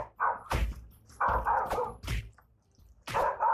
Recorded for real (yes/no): no